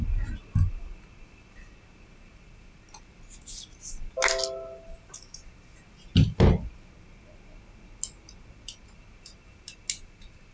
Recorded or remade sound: recorded